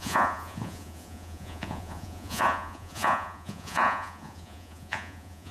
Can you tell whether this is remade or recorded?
remade